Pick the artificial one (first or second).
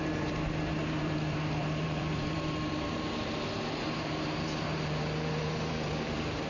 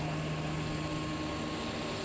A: first